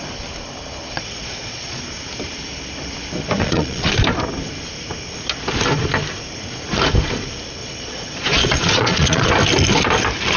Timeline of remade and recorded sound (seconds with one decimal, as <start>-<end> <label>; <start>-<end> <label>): 0.0-0.8 recorded; 0.8-1.8 remade; 1.8-3.4 recorded; 3.4-3.9 remade; 3.9-7.6 recorded; 7.6-9.3 remade; 9.3-10.4 recorded